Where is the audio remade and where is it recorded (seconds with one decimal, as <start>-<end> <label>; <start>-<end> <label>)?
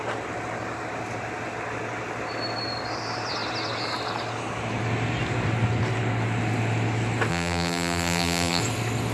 0.0-7.3 recorded; 7.3-8.6 remade; 8.6-9.1 recorded